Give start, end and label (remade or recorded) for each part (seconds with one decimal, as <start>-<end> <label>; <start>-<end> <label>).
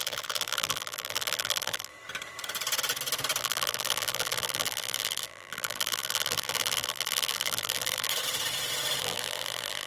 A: 0.0-1.9 remade; 1.9-3.4 recorded; 3.4-8.1 remade; 8.1-9.0 recorded; 9.0-9.9 remade